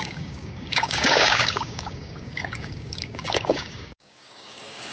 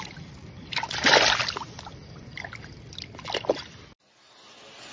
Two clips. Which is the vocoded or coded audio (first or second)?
first